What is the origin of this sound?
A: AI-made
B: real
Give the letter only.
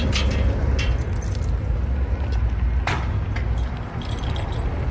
B